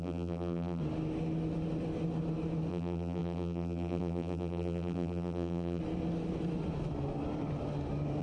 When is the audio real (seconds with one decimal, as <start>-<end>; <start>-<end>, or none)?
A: 0.8-2.7; 5.8-8.2